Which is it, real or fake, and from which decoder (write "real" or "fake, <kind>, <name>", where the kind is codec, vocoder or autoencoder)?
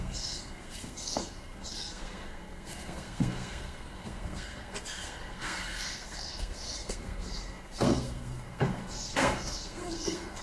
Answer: fake, codec, SNAC